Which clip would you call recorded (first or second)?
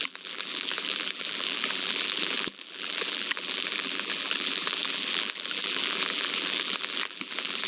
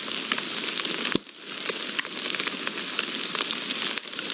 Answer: second